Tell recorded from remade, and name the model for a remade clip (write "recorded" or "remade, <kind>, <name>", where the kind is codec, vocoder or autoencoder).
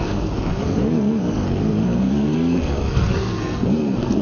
remade, codec, SNAC